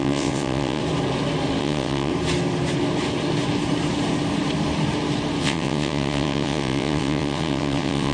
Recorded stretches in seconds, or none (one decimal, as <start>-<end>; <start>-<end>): 0.8-1.6; 2.1-5.4

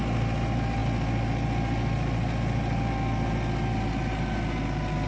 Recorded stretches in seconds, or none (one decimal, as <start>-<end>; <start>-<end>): 0.0-5.1

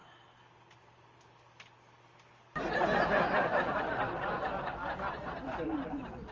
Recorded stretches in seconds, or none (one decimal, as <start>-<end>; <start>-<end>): 0.0-6.3

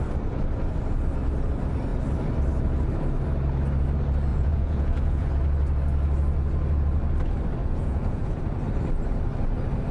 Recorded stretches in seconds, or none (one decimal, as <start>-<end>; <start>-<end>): 0.0-4.3; 5.3-7.6; 8.4-9.9

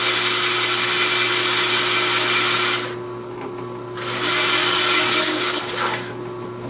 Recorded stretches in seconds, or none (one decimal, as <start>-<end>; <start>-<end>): 0.0-4.6; 6.1-6.7

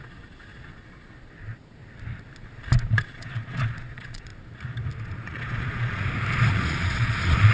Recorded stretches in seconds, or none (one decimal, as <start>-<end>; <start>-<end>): 1.8-2.9; 4.3-5.0; 6.0-6.5

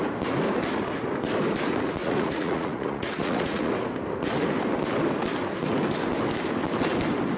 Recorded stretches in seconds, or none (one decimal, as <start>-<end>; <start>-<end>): 0.0-2.0; 3.7-7.4